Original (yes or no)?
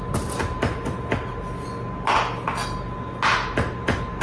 yes